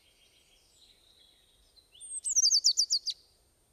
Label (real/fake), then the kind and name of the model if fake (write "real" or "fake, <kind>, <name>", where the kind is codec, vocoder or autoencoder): real